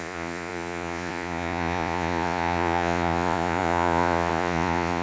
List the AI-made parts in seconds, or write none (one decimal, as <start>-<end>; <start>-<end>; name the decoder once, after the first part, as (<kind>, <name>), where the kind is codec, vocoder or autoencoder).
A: 0.0-5.0 (vocoder, Vocos)